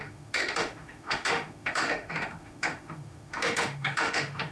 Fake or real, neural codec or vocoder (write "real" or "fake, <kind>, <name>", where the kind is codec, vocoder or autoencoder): fake, autoencoder, DAC-VAE